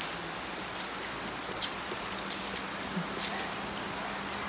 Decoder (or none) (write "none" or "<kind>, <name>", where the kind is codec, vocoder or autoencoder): none